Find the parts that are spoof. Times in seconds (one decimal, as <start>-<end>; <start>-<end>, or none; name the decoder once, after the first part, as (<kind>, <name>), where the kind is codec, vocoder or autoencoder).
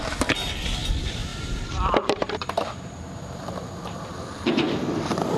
1.3-4.5 (vocoder, BigVGAN v2)